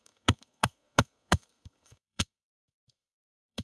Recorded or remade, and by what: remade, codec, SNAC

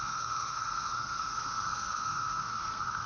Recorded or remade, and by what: remade, codec, SNAC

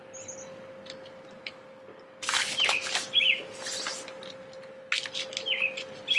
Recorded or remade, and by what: recorded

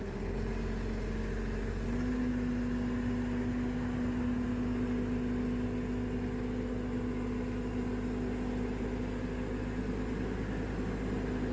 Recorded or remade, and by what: recorded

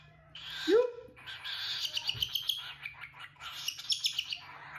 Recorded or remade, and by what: recorded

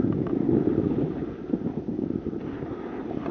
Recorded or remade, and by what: recorded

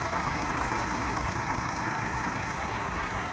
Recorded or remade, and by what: remade, codec, SNAC